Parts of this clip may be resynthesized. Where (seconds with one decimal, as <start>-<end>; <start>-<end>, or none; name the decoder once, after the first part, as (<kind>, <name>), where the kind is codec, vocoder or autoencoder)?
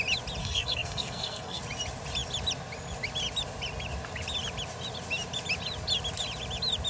0.4-1.6 (codec, SNAC)